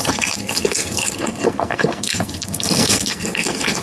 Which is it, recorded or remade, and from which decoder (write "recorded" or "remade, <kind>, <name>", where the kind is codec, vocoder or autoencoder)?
remade, codec, SNAC